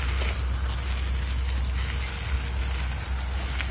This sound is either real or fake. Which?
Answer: real